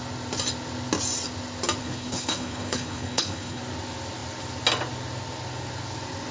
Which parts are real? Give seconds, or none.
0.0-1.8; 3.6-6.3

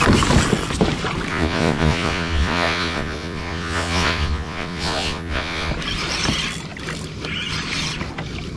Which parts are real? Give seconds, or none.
0.0-1.3; 5.7-8.6

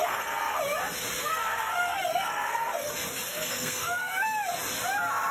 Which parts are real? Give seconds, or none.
0.6-1.2; 2.9-3.3; 4.1-5.3

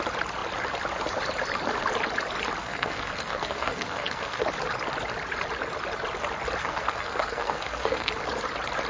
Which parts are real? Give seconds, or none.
0.0-2.6; 4.4-6.6; 8.1-8.9